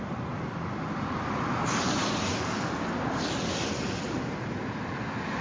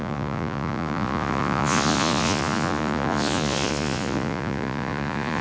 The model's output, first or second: second